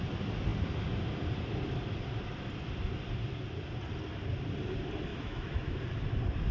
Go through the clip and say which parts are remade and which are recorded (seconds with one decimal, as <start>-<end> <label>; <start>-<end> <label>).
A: 0.0-5.1 recorded; 5.1-5.8 remade; 5.8-6.5 recorded